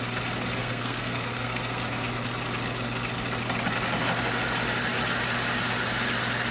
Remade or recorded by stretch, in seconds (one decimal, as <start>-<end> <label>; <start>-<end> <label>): 0.0-0.6 recorded; 0.6-1.8 remade; 1.8-6.5 recorded

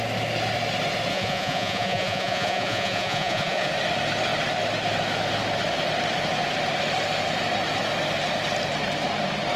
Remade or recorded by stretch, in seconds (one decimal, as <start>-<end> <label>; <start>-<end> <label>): 0.0-1.1 recorded; 1.1-3.7 remade; 3.7-9.6 recorded

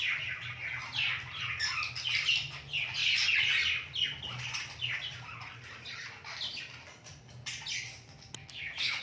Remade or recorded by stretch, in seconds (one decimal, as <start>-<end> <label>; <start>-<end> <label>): 0.0-8.4 recorded; 8.4-9.0 remade